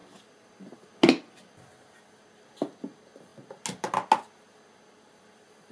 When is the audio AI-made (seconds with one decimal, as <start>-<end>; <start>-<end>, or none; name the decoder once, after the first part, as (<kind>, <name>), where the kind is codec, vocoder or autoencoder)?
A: none